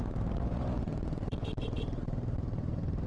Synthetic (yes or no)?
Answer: yes